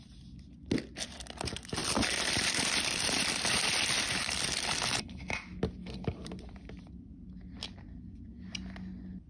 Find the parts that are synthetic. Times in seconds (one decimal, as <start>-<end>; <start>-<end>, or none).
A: 1.8-5.1